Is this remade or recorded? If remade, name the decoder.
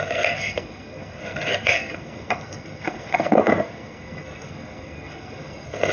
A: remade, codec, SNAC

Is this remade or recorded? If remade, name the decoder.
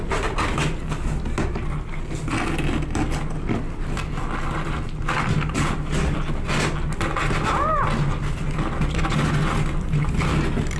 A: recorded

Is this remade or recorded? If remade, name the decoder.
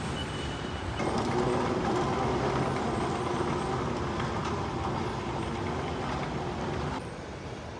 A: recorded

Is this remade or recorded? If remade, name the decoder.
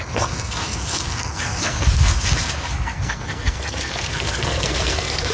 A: remade, codec, SNAC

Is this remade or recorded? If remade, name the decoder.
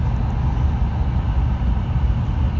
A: recorded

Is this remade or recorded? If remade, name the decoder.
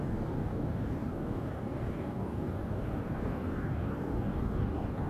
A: remade, codec, DAC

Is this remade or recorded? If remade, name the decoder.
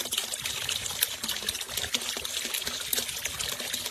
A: recorded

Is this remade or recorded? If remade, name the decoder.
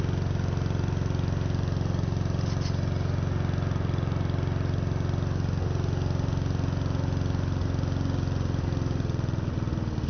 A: recorded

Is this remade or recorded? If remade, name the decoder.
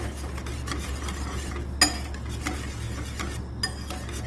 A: recorded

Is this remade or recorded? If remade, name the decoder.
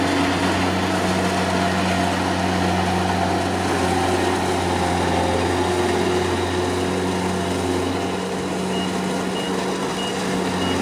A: recorded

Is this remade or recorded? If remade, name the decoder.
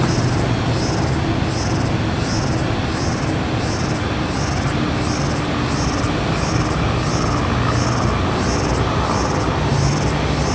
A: recorded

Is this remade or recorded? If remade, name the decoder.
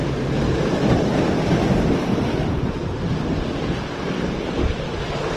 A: recorded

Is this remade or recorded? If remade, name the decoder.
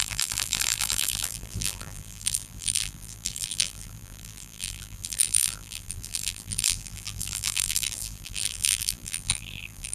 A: remade, vocoder, BigVGAN v2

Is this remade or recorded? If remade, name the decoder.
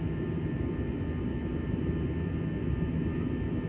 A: recorded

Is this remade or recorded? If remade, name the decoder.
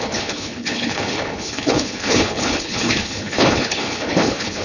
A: remade, codec, HILCodec